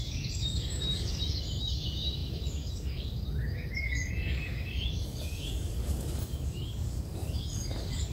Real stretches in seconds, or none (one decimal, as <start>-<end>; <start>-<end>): none